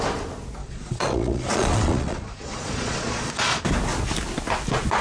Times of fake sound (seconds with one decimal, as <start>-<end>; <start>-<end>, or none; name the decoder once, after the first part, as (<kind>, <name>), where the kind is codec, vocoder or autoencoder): 0.6-3.6 (vocoder, Vocos)